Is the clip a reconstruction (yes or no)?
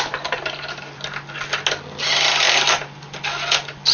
no